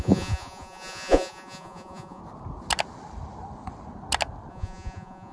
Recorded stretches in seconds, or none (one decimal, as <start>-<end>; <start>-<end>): 2.2-4.5